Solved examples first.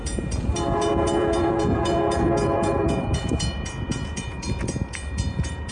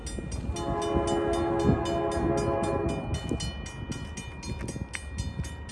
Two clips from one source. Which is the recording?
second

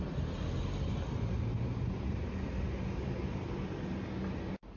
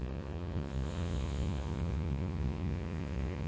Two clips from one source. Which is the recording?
first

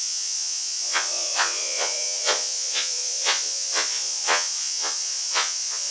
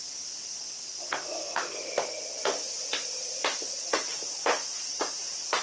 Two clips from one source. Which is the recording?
second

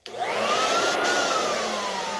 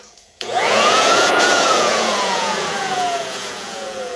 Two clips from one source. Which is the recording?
first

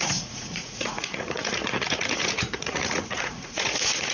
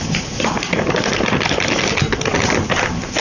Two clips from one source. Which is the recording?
second